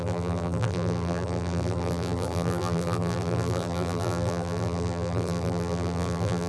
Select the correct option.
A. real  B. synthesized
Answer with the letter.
B